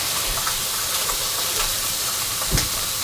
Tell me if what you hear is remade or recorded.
remade